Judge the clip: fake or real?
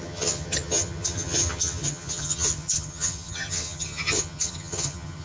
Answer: fake